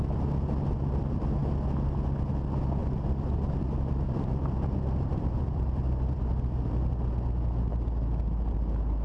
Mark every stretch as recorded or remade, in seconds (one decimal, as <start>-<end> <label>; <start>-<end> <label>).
0.0-2.8 recorded; 2.8-7.1 remade; 7.1-9.0 recorded